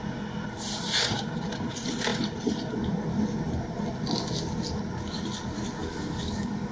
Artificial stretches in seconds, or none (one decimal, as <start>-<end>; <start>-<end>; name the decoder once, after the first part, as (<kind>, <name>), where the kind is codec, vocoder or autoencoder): 5.8-6.7 (codec, DAC)